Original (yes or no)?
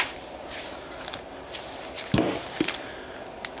yes